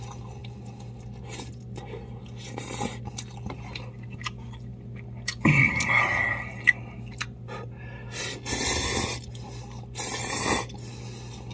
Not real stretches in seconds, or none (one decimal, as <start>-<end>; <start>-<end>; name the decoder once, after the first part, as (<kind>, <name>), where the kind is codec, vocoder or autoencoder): none